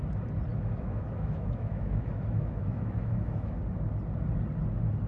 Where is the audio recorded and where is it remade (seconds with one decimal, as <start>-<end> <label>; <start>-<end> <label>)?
0.0-0.5 recorded; 0.5-3.6 remade; 3.6-5.1 recorded